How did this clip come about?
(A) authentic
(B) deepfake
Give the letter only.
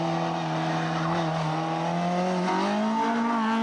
A